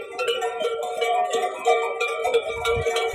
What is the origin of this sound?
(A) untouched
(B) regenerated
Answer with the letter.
B